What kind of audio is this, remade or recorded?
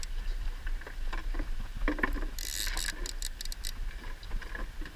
recorded